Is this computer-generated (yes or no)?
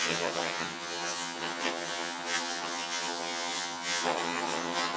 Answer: yes